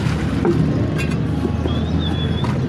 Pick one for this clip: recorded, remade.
recorded